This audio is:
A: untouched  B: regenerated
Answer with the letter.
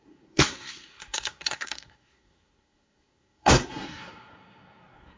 B